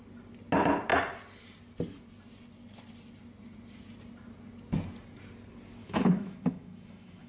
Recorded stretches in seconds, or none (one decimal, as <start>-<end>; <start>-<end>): 0.0-5.8